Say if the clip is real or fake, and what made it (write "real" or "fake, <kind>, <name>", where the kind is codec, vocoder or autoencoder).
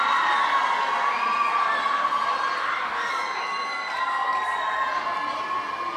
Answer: real